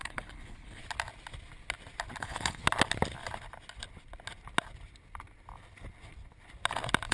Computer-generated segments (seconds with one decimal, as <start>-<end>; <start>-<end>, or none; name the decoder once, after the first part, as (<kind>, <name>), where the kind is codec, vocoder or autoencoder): 0.0-0.8 (codec, HILCodec); 2.2-2.6